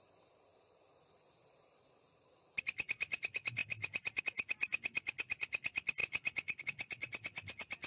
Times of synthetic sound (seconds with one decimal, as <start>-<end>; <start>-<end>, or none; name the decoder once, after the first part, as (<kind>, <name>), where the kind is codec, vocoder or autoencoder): none